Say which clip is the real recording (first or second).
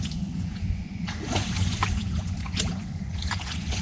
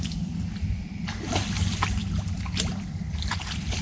second